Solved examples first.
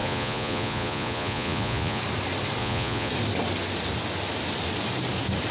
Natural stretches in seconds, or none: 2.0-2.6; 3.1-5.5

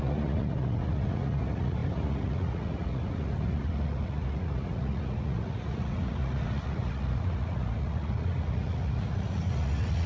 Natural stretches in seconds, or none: none

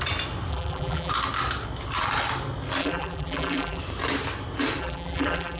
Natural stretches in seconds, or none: 0.0-0.5; 1.1-2.8; 3.8-4.8

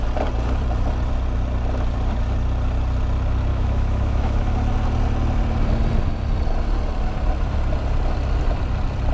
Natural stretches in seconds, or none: 0.0-3.5; 4.5-9.1

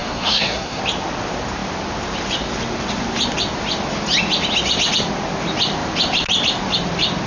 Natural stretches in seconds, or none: 0.8-7.3

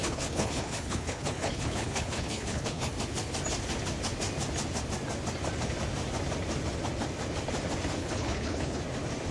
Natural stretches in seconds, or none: 2.9-8.0; 8.8-9.3

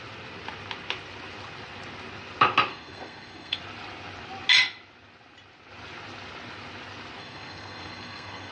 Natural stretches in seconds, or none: 0.0-2.7; 3.6-7.2